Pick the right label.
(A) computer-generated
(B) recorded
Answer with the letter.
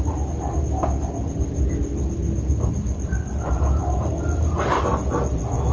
B